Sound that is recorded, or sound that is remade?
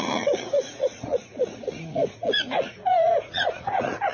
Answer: remade